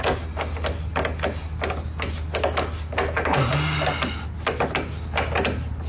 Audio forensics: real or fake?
real